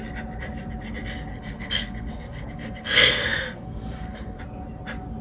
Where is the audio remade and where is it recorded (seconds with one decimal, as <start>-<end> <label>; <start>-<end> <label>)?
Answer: 0.0-1.3 recorded; 1.3-4.4 remade; 4.4-5.2 recorded